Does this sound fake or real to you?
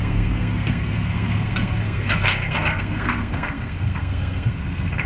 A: fake